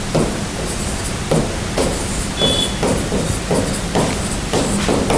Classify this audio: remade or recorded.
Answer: recorded